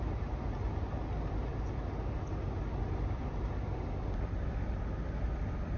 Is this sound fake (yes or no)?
no